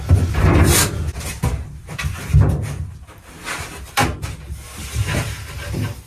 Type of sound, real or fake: real